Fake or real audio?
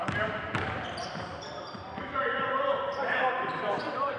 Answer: fake